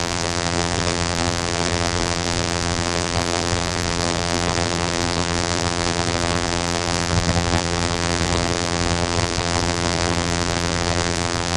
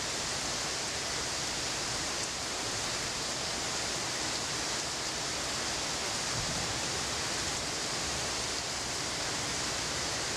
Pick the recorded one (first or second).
second